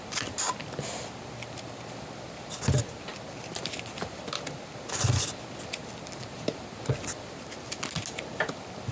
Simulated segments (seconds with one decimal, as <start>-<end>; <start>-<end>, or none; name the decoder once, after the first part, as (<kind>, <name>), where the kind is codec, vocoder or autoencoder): none